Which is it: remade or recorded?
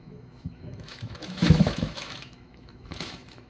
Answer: remade